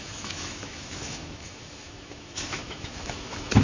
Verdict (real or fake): fake